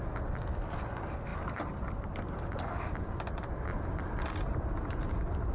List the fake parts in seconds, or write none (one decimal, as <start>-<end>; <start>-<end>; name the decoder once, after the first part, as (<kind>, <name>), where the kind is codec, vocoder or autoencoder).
none